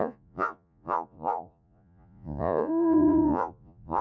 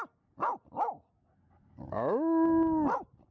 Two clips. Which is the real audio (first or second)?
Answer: second